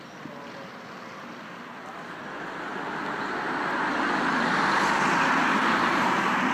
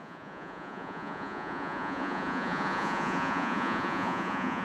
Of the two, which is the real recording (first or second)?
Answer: first